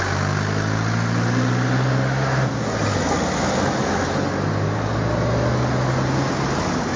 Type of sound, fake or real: real